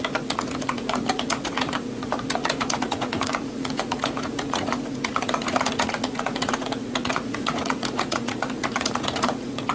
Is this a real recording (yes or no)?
no